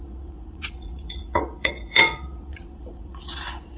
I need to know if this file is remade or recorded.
remade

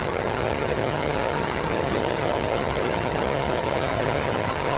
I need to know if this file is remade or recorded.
remade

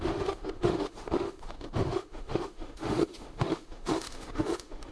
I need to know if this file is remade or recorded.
remade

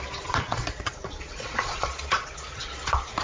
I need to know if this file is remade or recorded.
remade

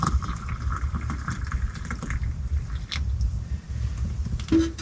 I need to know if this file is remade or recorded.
recorded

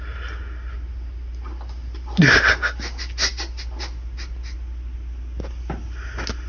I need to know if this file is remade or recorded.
recorded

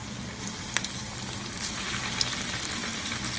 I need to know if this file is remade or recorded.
recorded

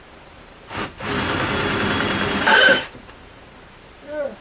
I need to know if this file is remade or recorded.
remade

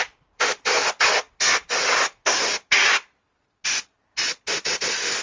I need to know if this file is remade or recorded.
recorded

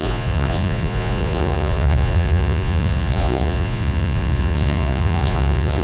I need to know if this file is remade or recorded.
remade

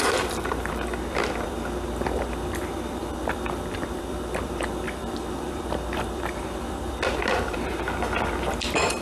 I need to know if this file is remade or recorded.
remade